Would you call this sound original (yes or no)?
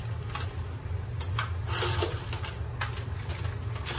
yes